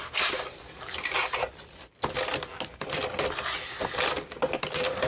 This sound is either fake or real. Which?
real